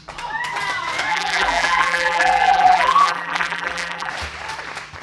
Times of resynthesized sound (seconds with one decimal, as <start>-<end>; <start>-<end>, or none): 1.1-4.1